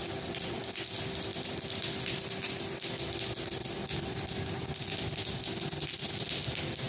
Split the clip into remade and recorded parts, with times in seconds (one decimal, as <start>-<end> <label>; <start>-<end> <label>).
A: 0.0-6.9 recorded